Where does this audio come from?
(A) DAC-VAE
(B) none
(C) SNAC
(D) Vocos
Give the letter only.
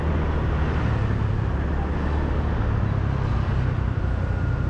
B